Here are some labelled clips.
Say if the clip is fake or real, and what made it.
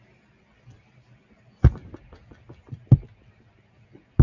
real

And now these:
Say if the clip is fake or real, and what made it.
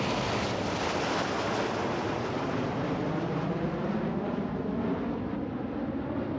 real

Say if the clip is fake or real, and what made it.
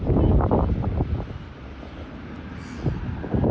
real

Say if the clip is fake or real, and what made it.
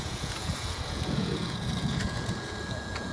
fake, vocoder, Vocos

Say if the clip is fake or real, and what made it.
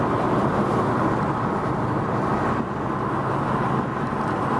real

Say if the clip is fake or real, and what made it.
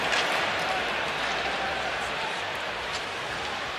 real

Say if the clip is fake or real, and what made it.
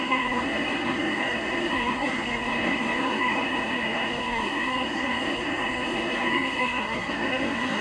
fake, codec, SNAC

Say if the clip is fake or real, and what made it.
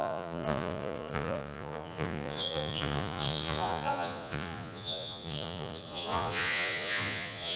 fake, vocoder, Vocos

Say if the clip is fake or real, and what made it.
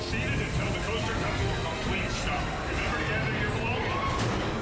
real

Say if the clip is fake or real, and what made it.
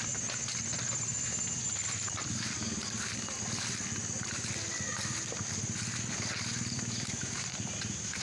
real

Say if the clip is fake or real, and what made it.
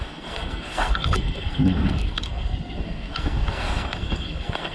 fake, codec, SNAC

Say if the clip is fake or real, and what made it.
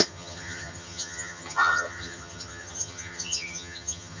fake, vocoder, HiFi-GAN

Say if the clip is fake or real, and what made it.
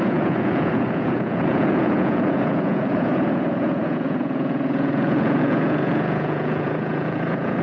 fake, vocoder, Vocos